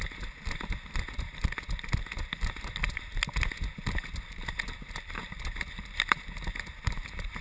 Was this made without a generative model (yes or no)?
yes